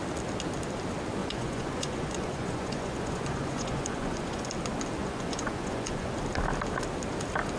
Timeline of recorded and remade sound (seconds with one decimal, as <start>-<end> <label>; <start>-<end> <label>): 0.0-1.2 recorded; 1.2-4.5 remade; 4.5-5.0 recorded; 5.0-6.1 remade; 6.1-7.6 recorded